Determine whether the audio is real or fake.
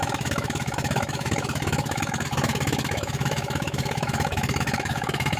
fake